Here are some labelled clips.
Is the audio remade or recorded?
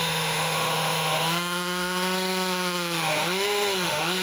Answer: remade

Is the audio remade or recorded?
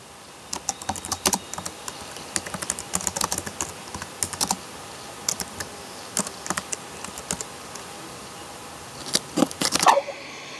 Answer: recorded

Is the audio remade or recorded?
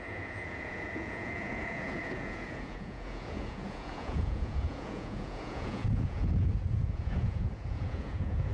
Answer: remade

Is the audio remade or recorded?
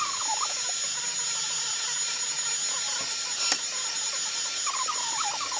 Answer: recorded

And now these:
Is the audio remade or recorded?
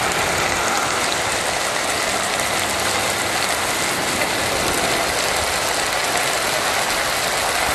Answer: recorded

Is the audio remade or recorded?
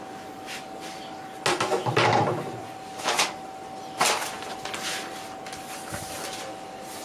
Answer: recorded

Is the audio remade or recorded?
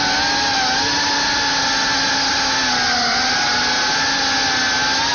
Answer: recorded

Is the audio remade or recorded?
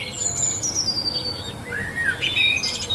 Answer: recorded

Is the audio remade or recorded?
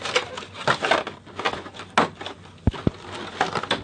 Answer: recorded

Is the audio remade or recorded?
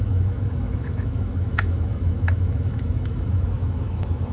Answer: remade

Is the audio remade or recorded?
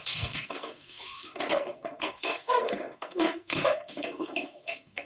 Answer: remade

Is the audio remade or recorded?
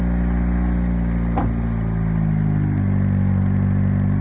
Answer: recorded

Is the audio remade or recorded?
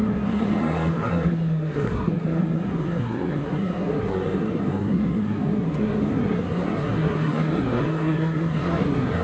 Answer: remade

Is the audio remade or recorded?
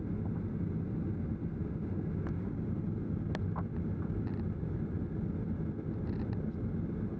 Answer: recorded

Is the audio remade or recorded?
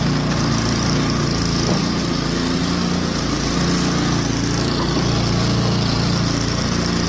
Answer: recorded